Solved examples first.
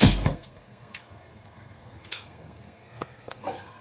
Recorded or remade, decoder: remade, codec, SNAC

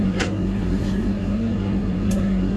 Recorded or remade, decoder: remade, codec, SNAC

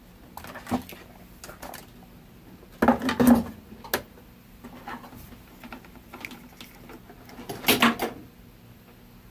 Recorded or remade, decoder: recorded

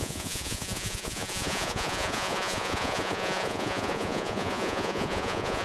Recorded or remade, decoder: remade, vocoder, Vocos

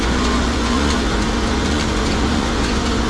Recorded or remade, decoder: remade, vocoder, Vocos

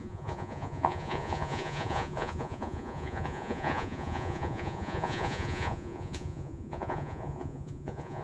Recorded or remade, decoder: remade, vocoder, Vocos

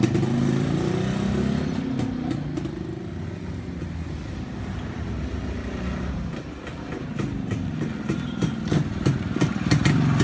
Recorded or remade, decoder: recorded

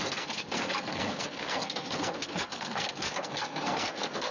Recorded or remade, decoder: remade, codec, SNAC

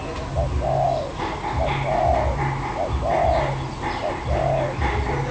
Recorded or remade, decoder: recorded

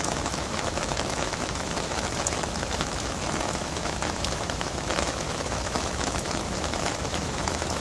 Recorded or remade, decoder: remade, autoencoder, DAC-VAE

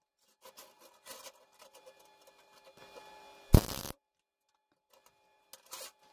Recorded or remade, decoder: recorded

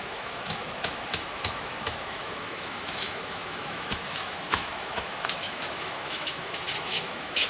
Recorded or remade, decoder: remade, autoencoder, DAC-VAE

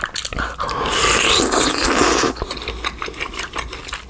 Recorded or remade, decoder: recorded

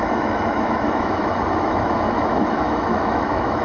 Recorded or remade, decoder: remade, autoencoder, DAC-VAE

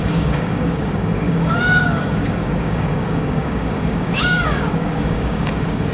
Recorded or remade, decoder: remade, codec, DAC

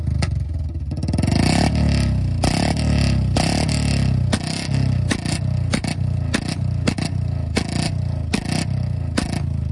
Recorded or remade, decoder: recorded